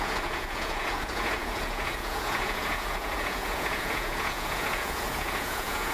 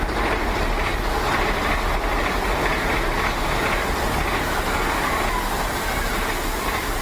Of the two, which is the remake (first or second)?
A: first